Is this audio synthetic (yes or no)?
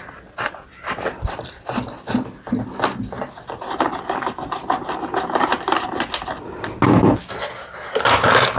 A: no